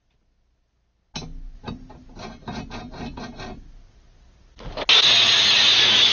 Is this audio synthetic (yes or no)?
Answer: no